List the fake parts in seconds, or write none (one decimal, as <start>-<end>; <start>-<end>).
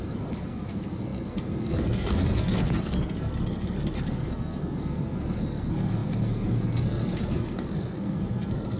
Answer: 0.0-8.8